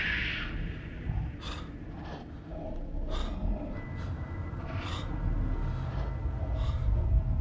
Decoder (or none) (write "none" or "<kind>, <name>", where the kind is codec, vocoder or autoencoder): none